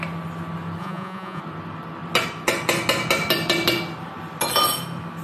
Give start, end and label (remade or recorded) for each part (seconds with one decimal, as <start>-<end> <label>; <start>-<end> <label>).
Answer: 0.0-0.8 recorded; 0.8-1.4 remade; 1.4-5.2 recorded